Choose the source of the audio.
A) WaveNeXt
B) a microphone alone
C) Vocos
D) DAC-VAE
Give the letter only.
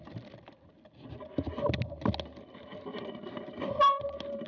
B